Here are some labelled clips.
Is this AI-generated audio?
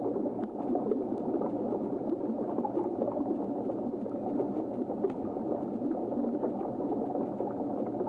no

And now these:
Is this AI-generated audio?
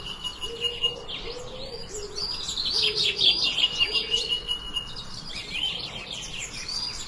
no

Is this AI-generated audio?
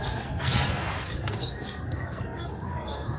yes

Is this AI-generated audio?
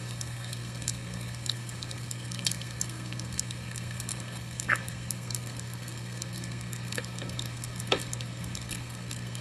yes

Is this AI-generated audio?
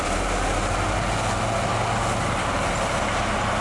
no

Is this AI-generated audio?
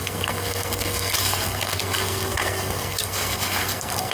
yes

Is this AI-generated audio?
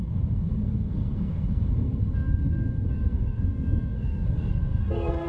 yes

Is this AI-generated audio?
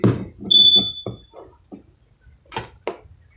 no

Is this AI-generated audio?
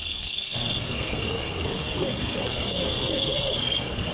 yes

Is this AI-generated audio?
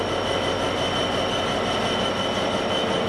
no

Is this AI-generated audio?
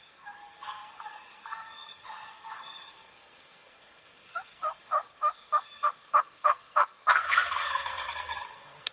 yes